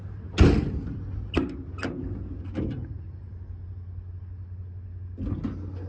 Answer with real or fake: real